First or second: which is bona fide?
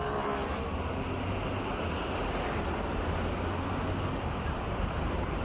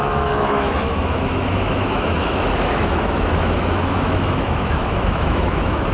first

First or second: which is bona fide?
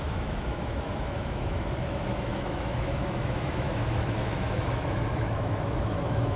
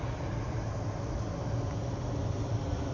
second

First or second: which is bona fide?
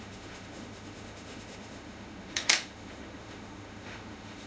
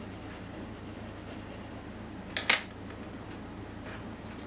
second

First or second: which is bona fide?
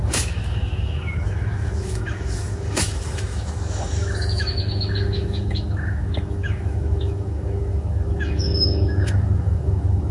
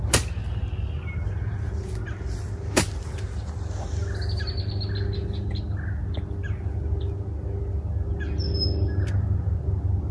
second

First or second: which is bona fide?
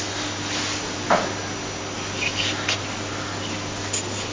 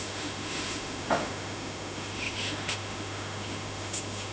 first